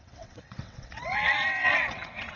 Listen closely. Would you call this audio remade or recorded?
remade